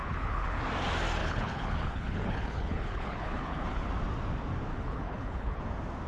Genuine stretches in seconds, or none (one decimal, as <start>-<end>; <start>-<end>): 0.6-1.2; 3.9-4.7; 5.6-6.1